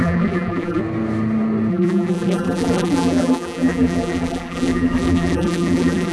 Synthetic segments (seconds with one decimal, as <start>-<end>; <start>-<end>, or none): 0.0-0.8; 1.7-6.1